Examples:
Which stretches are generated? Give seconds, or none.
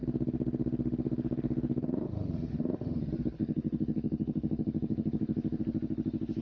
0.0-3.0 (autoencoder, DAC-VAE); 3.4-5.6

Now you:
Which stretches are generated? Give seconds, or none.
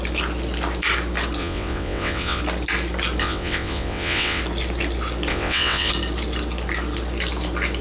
1.4-2.4 (vocoder, WaveNeXt); 3.2-4.4; 5.3-5.9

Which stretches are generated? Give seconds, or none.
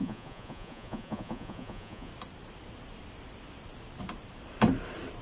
0.0-2.1 (vocoder, Vocos)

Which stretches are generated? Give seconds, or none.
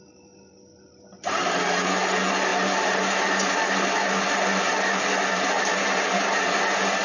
none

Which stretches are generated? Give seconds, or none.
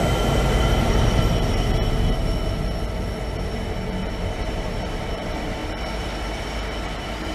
0.0-2.2 (vocoder, BigVGAN v2); 4.2-5.6; 6.4-7.3